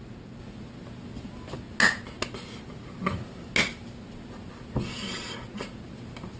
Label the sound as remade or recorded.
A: recorded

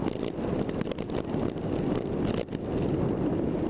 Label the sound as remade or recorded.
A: recorded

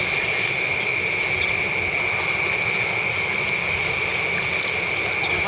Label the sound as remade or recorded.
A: recorded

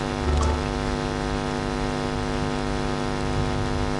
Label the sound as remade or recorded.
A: recorded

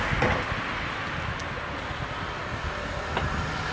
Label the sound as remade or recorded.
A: recorded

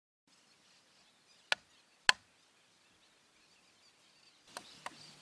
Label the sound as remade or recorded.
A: recorded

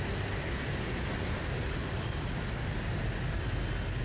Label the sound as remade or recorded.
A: recorded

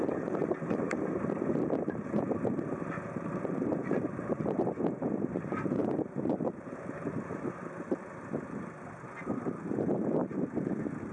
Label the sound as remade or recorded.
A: remade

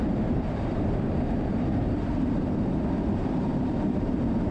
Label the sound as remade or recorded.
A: remade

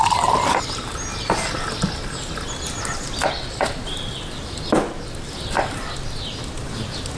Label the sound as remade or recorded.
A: recorded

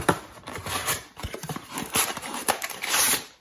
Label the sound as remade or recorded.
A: remade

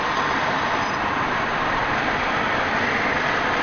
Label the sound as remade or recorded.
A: remade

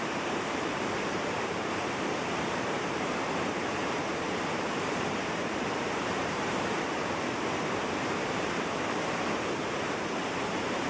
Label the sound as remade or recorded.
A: remade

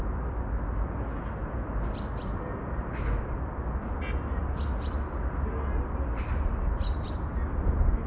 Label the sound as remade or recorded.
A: recorded